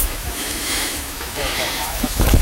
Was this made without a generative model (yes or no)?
no